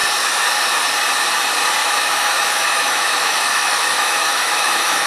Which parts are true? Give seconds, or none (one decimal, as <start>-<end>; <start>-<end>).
0.0-1.8